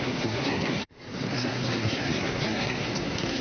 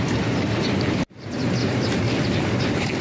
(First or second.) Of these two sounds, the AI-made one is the first